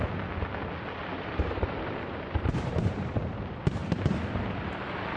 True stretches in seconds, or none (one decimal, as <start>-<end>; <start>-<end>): 0.0-1.0; 3.4-5.2